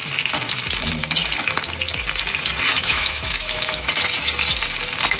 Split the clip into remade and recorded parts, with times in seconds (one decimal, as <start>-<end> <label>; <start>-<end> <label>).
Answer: 0.0-2.7 recorded; 2.7-3.9 remade; 3.9-5.2 recorded